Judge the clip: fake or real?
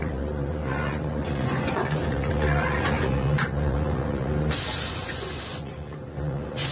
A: fake